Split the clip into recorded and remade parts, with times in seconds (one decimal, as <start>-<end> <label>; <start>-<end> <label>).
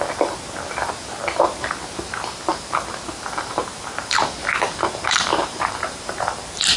0.0-4.4 recorded; 4.4-6.8 remade